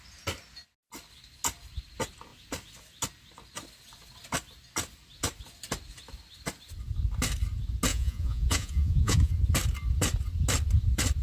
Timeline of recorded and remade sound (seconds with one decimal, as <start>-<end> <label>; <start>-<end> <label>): 0.0-7.9 recorded; 7.9-9.3 remade; 9.3-11.2 recorded